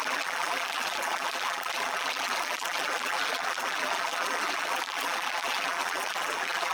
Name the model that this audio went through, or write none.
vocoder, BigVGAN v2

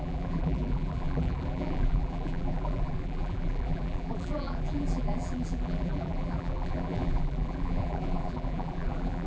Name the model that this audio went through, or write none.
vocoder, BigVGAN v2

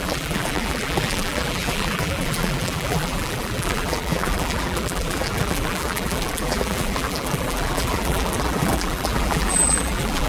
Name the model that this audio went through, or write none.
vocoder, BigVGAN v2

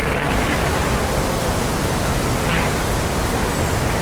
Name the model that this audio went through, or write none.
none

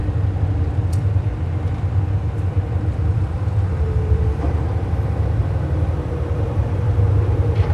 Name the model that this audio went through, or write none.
vocoder, BigVGAN v2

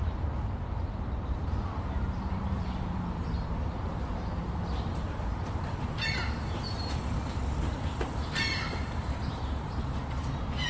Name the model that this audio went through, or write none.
vocoder, BigVGAN v2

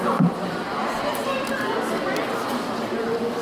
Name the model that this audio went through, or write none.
vocoder, BigVGAN v2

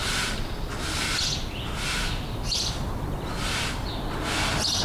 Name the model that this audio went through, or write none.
none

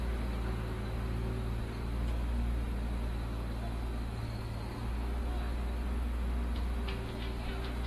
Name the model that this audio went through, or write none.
none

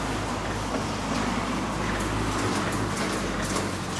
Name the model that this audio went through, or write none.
none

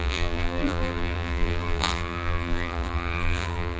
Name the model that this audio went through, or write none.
vocoder, BigVGAN v2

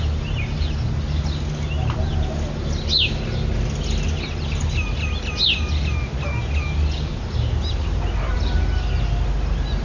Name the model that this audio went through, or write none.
none